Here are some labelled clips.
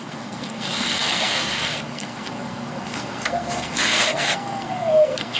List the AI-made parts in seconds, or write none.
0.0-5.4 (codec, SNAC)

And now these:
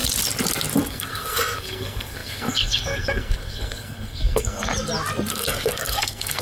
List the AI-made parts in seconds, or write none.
0.9-4.7 (codec, SNAC); 5.3-6.4

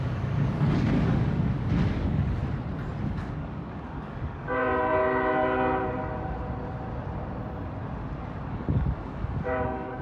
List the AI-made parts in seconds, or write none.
0.0-2.4 (codec, DAC); 3.0-4.7; 8.5-10.0